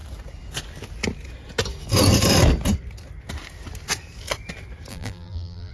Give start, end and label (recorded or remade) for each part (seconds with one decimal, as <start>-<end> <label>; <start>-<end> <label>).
0.0-4.9 recorded; 4.9-5.7 remade